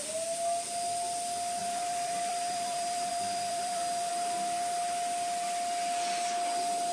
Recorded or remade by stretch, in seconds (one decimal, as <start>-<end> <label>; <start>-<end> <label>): 0.0-1.6 recorded; 1.6-4.1 remade; 4.1-6.9 recorded

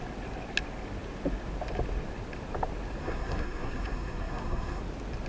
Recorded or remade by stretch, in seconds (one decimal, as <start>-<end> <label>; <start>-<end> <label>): 0.0-3.0 recorded; 3.0-4.8 remade; 4.8-5.3 recorded

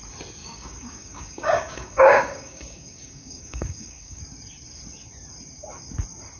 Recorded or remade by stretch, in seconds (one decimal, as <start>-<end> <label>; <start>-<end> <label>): 0.0-0.4 recorded; 0.4-4.2 remade; 4.2-6.4 recorded

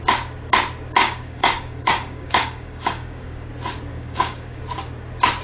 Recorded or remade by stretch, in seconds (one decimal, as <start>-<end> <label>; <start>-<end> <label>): 0.0-1.0 recorded; 1.0-3.5 remade; 3.5-3.9 recorded; 3.9-4.6 remade; 4.6-5.4 recorded

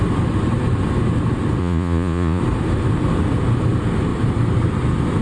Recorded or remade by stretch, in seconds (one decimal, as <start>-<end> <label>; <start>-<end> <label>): 0.0-1.6 recorded; 1.6-2.4 remade; 2.4-5.2 recorded